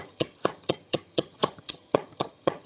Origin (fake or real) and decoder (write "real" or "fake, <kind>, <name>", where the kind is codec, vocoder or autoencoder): fake, vocoder, HiFi-GAN